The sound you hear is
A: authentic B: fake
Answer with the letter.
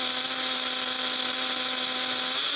A